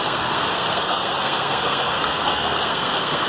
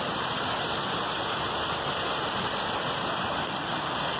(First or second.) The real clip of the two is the second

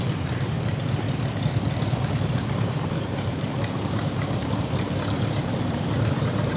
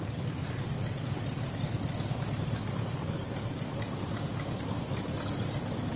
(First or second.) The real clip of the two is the second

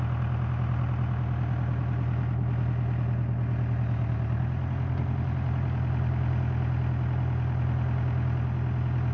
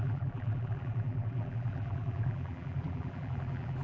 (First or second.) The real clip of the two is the first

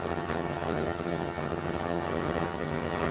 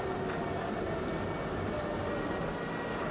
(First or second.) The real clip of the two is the second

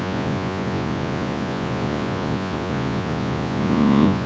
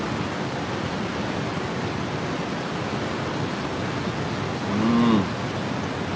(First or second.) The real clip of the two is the second